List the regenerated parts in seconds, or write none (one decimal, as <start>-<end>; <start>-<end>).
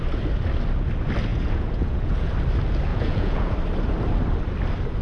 1.3-2.3; 2.9-3.5